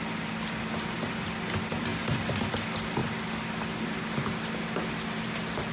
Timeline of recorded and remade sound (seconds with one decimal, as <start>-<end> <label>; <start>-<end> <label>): 0.0-1.9 recorded; 1.9-2.5 remade; 2.5-5.7 recorded